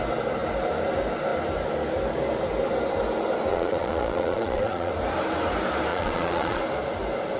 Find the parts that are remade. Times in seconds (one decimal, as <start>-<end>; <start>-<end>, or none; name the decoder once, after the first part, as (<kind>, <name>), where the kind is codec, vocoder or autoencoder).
3.5-4.9 (vocoder, Vocos); 5.9-6.6